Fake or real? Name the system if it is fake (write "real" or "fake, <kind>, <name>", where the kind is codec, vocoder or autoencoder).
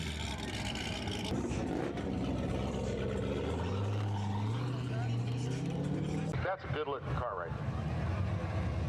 real